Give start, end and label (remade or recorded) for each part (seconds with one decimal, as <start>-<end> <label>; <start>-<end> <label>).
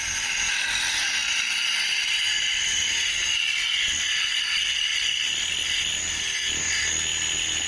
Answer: 0.0-7.7 recorded